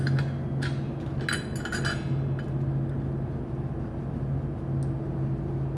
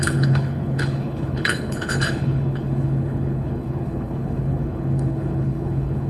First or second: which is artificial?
second